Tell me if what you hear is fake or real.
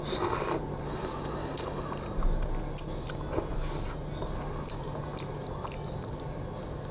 real